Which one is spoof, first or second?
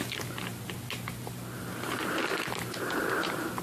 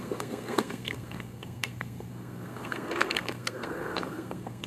second